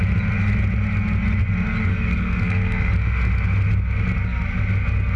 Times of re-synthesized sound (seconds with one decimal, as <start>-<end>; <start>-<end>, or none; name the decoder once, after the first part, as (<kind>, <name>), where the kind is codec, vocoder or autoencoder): 1.9-2.9 (codec, SNAC)